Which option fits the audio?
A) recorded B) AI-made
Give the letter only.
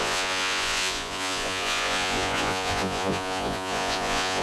B